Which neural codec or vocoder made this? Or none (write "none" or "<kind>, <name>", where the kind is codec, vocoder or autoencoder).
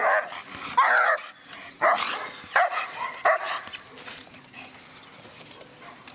none